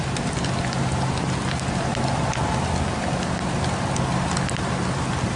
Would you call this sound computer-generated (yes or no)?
no